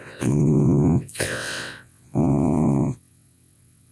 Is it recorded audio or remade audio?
remade